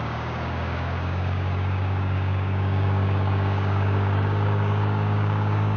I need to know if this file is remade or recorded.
remade